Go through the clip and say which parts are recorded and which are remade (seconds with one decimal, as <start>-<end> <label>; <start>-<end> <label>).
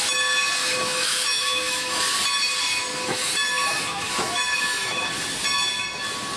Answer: 0.0-0.6 recorded; 0.6-2.0 remade; 2.0-2.9 recorded; 2.9-5.1 remade; 5.1-6.4 recorded